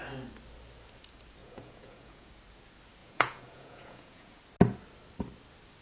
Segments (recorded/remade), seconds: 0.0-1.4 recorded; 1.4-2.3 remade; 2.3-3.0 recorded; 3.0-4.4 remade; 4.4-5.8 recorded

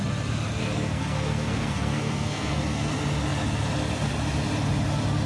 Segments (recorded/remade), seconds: 0.0-0.6 recorded; 0.6-2.9 remade; 2.9-5.3 recorded

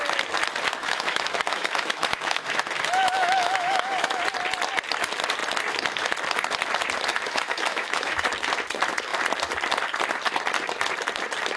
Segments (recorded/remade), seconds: 0.0-0.8 recorded; 0.8-4.2 remade; 4.2-7.1 recorded; 7.1-8.3 remade; 8.3-11.6 recorded

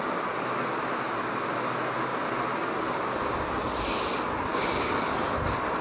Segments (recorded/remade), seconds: 0.0-5.8 recorded

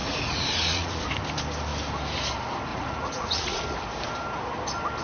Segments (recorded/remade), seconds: 0.0-1.0 remade; 1.0-2.7 recorded; 2.7-3.6 remade; 3.6-5.0 recorded

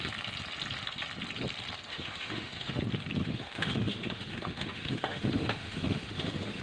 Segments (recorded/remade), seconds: 0.0-1.9 recorded; 1.9-2.8 remade; 2.8-3.2 recorded; 3.2-6.6 remade

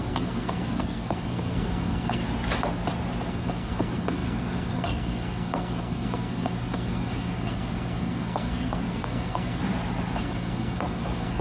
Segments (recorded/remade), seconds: 0.0-2.2 remade; 2.2-3.3 recorded; 3.3-9.6 remade; 9.6-10.2 recorded; 10.2-11.4 remade